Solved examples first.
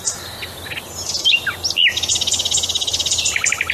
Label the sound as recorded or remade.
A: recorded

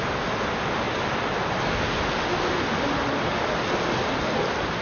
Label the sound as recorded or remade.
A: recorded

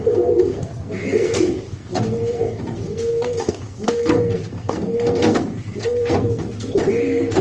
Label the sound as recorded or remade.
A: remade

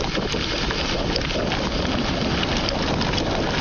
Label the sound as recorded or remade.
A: recorded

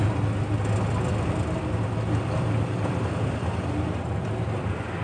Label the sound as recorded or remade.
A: recorded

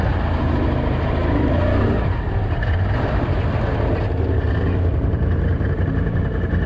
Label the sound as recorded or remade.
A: recorded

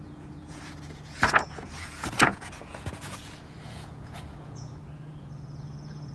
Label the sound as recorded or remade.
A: remade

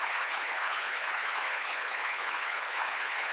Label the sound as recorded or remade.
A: remade